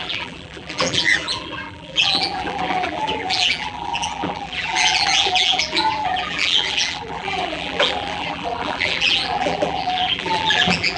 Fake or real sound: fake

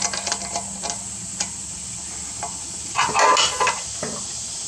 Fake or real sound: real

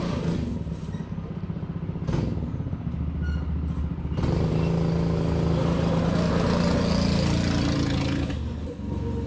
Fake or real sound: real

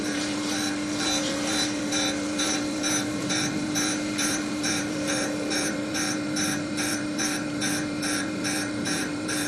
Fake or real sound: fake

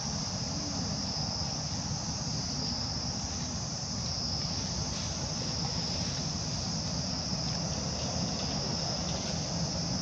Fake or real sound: real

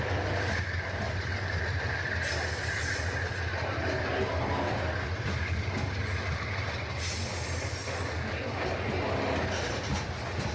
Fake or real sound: real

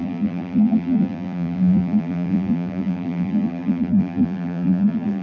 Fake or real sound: fake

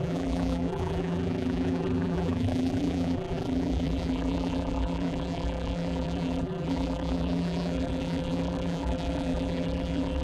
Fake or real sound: fake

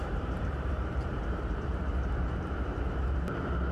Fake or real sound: fake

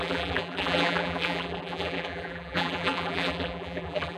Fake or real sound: fake